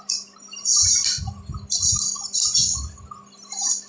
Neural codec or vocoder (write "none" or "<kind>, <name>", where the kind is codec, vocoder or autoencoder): none